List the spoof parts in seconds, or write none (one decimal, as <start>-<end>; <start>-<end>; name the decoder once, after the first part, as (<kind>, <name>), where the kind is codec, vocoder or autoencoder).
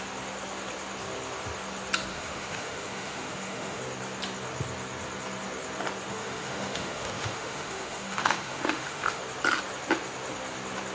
2.1-3.8 (autoencoder, DAC-VAE); 6.1-9.2